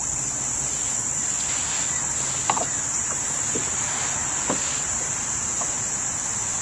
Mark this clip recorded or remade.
recorded